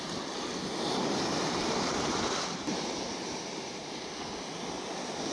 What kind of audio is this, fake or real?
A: real